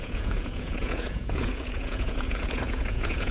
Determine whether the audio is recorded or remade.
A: remade